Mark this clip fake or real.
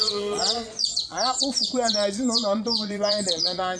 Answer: fake